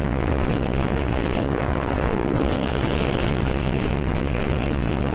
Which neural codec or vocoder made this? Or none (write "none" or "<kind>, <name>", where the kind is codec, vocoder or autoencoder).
vocoder, WaveNeXt